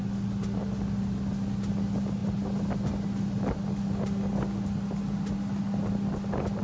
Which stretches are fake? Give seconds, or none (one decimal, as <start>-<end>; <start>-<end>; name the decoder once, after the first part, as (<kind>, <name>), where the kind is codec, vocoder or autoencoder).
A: none